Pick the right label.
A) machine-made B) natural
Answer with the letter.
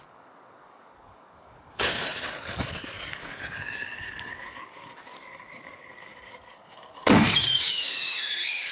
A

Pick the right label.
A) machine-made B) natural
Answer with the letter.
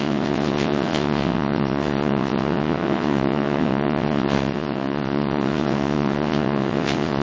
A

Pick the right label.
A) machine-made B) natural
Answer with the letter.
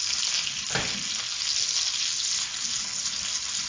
B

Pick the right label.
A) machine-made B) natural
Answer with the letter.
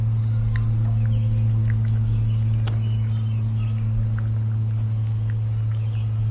B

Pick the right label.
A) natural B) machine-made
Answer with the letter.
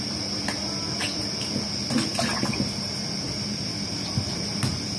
A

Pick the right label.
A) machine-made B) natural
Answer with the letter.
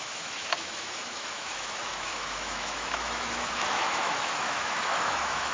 A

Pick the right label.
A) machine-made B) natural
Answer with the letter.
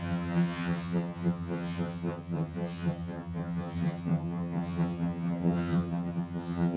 A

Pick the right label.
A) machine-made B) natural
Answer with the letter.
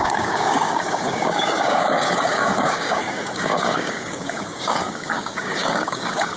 A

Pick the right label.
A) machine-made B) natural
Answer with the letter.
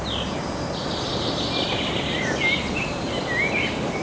B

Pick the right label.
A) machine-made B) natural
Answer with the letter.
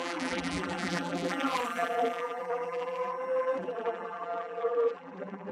A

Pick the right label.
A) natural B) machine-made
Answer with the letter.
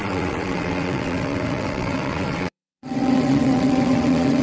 B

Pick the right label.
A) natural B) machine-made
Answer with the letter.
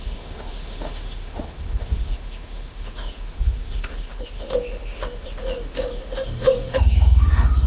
B